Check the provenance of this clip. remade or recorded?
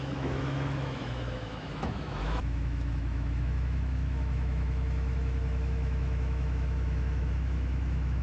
remade